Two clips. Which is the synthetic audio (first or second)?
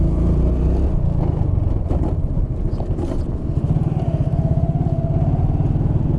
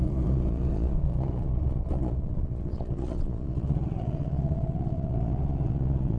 second